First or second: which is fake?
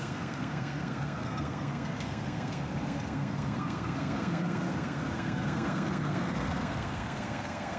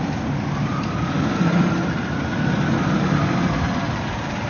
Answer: first